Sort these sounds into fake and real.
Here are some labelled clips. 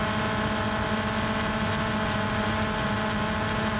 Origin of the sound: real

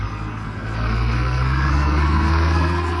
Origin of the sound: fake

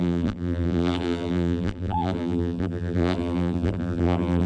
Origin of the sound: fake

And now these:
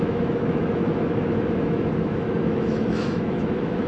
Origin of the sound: fake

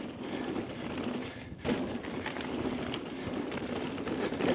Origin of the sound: real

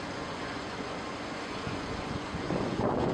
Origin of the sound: fake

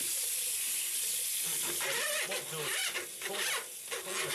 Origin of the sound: real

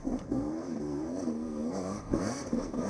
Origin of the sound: fake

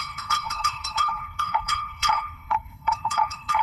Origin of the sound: fake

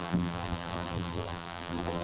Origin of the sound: fake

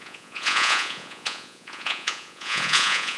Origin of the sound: fake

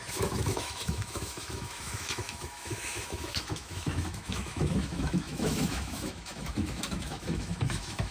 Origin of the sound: fake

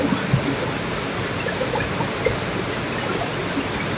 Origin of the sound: real